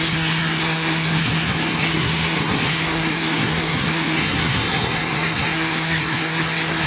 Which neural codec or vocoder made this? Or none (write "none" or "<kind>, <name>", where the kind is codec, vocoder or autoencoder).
codec, SNAC